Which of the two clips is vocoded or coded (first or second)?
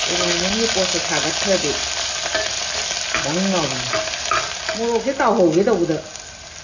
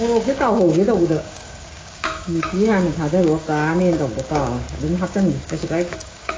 second